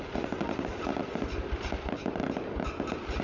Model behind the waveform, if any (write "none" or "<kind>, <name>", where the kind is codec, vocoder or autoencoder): none